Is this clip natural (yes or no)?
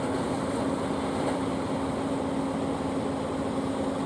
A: yes